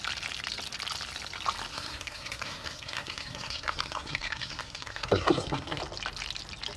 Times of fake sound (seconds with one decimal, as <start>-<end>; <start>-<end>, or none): 1.7-5.8